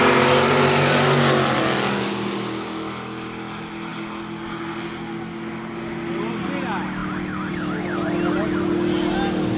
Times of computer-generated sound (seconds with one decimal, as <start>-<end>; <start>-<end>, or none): none